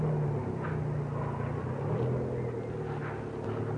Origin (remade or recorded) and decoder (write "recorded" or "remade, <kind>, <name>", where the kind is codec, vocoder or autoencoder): recorded